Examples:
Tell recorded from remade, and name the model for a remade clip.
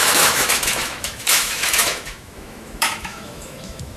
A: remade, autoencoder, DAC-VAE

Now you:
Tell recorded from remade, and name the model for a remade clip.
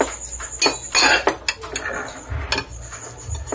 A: recorded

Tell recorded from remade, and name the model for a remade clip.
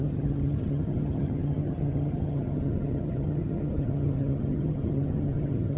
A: remade, vocoder, HiFi-GAN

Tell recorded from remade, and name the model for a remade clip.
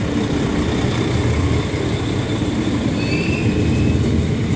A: recorded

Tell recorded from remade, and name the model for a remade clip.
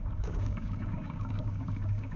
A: remade, codec, DAC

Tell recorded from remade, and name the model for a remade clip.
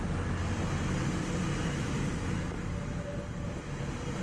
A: recorded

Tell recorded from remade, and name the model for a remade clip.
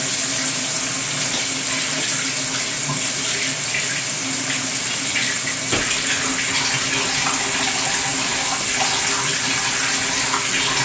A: recorded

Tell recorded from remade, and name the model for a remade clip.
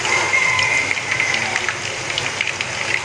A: recorded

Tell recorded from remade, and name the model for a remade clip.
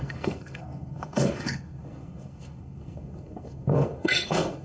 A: remade, codec, SNAC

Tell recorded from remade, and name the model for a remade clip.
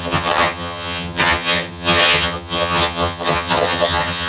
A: remade, vocoder, HiFi-GAN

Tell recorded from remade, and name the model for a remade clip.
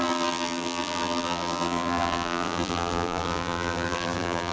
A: remade, vocoder, BigVGAN v2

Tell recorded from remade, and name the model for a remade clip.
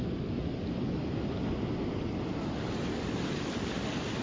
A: recorded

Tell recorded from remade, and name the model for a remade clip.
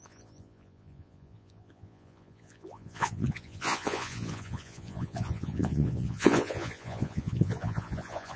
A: remade, vocoder, Vocos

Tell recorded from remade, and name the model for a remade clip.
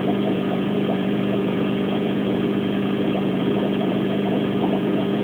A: remade, vocoder, Vocos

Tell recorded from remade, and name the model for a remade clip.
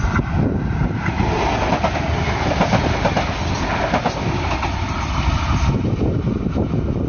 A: recorded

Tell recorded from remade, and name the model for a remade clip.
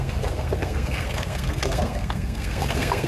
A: remade, codec, SNAC